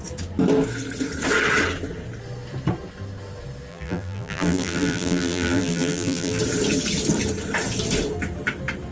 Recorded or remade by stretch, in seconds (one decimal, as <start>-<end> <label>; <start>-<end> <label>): 0.0-3.7 recorded; 3.7-6.4 remade; 6.4-8.9 recorded